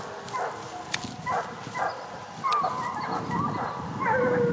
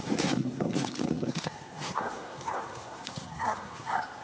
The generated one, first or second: second